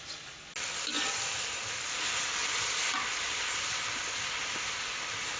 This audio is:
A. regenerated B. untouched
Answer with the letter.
B